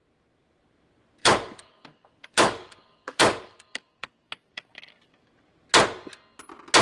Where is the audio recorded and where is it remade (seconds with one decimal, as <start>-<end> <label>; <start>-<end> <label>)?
0.0-1.2 recorded; 1.2-5.3 remade; 5.3-6.8 recorded